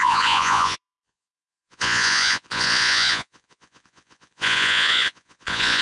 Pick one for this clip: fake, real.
fake